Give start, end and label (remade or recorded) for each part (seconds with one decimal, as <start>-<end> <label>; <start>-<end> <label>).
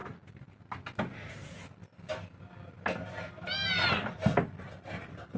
0.0-0.5 remade; 0.5-5.4 recorded